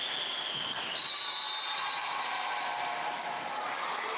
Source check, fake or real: real